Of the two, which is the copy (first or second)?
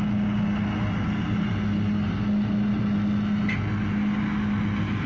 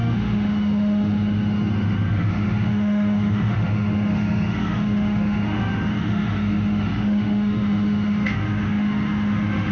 second